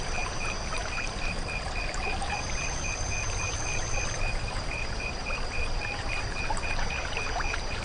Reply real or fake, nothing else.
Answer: fake